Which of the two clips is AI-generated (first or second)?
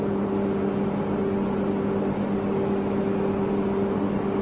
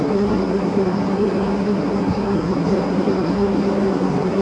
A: second